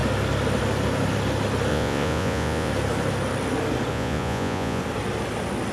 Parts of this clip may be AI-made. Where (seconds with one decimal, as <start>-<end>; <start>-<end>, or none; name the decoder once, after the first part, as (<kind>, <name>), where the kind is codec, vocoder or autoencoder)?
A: 1.7-2.7 (vocoder, Vocos); 3.9-4.8